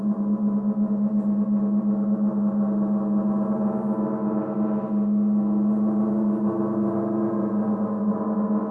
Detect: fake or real real